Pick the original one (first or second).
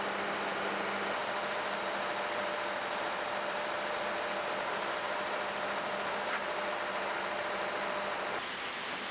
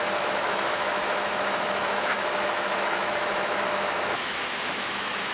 first